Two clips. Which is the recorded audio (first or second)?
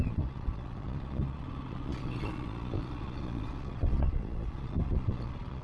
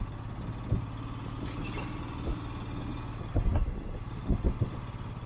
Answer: second